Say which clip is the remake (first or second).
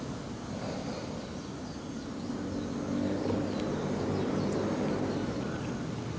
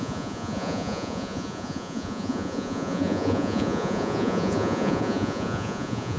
second